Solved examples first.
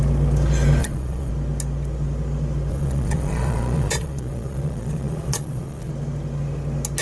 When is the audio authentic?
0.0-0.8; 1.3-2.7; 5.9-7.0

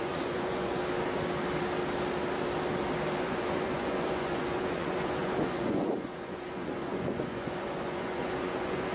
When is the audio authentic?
0.8-3.2

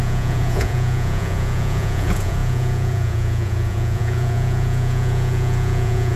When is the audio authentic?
none